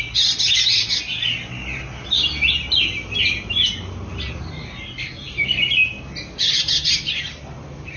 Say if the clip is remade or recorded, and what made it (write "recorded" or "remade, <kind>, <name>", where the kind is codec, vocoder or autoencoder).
recorded